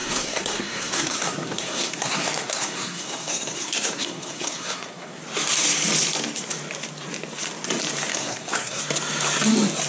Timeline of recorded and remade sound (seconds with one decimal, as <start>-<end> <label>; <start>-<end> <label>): 0.0-5.2 remade; 5.2-8.1 recorded; 8.1-8.8 remade; 8.8-9.9 recorded

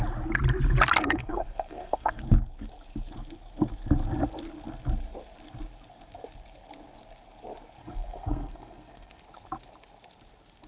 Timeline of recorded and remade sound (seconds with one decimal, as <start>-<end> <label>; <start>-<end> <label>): 0.0-1.0 recorded; 1.0-2.2 remade; 2.2-7.8 recorded; 7.8-9.2 remade; 9.2-10.7 recorded

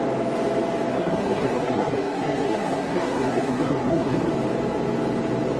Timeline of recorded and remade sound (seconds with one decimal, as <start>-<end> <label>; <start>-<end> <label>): 0.0-0.9 recorded; 0.9-4.3 remade; 4.3-5.6 recorded

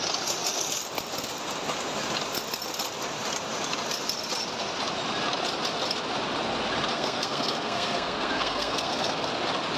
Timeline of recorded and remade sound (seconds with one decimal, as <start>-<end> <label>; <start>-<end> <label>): 0.0-6.9 recorded; 6.9-9.3 remade; 9.3-9.8 recorded

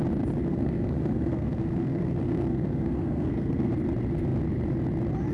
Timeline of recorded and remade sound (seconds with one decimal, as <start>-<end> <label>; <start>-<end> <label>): 0.0-0.5 recorded; 0.5-3.7 remade; 3.7-5.3 recorded

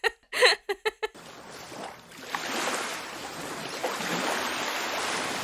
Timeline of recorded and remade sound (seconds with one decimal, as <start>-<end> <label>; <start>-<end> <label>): 0.0-5.4 recorded

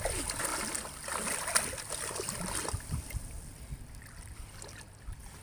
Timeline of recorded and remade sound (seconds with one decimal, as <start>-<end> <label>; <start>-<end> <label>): 0.0-5.4 recorded